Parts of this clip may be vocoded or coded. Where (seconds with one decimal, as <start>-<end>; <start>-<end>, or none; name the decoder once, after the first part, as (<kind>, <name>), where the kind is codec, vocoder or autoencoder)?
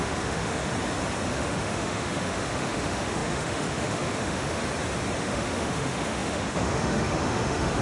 0.0-0.7 (autoencoder, DAC-VAE); 1.3-4.6; 5.2-7.8